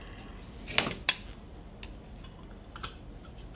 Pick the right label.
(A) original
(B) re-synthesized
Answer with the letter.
A